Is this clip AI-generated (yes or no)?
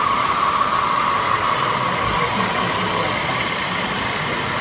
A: no